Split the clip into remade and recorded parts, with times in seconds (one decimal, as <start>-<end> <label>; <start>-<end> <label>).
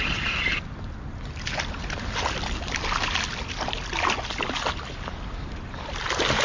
0.0-6.4 recorded